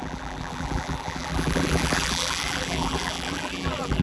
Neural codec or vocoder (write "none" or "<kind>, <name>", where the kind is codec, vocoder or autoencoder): vocoder, BigVGAN v2